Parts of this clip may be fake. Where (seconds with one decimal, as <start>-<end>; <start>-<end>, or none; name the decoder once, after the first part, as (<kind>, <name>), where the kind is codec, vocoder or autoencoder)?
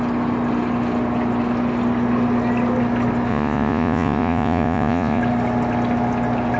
3.3-5.2 (vocoder, Vocos)